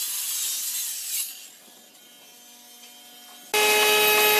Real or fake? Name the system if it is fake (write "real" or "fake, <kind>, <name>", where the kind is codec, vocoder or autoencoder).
real